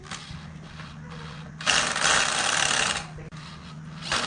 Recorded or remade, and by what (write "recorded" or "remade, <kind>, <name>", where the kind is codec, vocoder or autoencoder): recorded